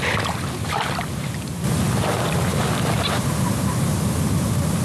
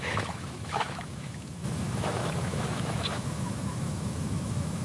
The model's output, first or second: second